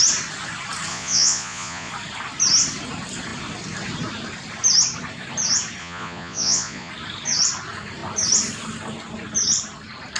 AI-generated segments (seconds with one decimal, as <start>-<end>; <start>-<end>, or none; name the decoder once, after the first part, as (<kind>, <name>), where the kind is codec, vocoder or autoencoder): 0.9-1.9 (vocoder, Vocos); 5.8-6.9